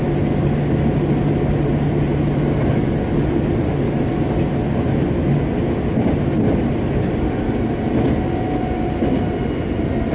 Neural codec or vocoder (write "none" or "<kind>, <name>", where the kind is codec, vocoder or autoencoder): none